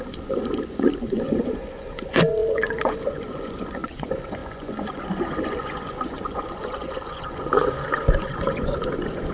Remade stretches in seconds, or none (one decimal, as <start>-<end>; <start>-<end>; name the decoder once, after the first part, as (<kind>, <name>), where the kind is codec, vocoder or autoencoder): 0.0-9.3 (vocoder, Vocos)